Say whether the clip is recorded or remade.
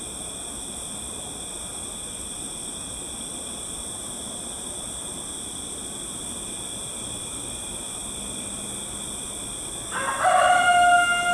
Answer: recorded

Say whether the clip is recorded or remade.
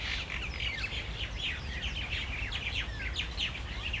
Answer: recorded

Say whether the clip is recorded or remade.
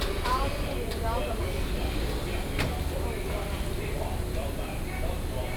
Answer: recorded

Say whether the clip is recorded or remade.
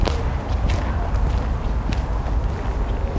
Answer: recorded